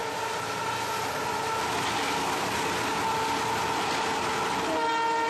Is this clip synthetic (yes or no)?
no